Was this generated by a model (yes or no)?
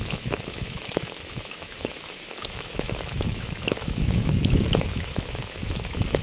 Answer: yes